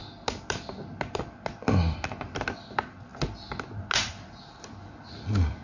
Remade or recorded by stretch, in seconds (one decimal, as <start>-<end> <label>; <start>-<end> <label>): 0.0-5.6 recorded